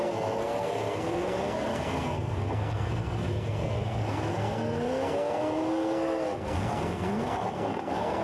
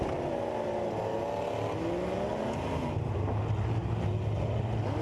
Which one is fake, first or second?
first